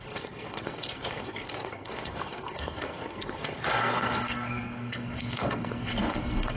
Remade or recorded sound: remade